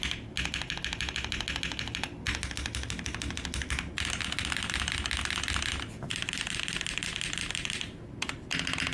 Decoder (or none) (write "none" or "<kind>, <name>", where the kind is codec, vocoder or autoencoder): none